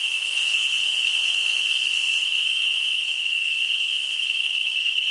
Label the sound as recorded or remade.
remade